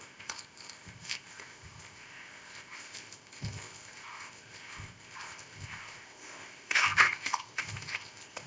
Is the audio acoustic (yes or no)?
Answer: no